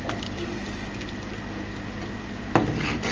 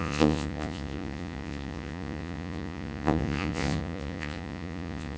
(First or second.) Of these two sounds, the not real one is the second